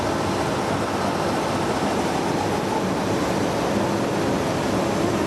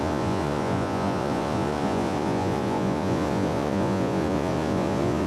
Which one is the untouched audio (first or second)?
first